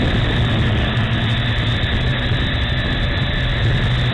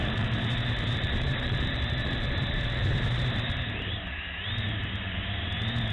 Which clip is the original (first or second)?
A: first